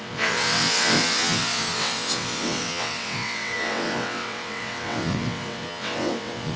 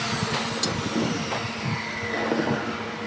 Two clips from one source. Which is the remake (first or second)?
first